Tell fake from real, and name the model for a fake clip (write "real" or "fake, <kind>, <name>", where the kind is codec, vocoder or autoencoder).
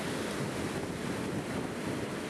real